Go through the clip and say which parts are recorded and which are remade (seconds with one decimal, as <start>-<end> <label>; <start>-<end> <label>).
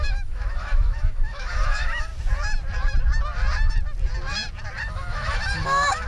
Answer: 0.0-2.1 remade; 2.1-4.8 recorded; 4.8-6.1 remade